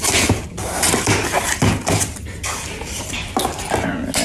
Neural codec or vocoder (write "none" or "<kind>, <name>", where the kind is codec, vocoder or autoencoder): none